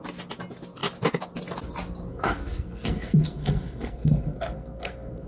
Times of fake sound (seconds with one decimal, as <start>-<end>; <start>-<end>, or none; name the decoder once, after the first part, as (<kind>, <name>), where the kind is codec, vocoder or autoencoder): 2.1-5.3 (codec, SNAC)